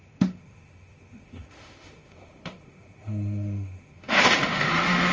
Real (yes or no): no